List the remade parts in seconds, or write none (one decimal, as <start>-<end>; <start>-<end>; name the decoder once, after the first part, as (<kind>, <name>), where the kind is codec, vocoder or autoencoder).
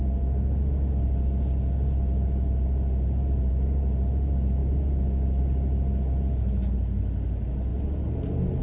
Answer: none